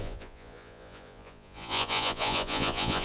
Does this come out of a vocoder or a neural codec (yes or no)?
yes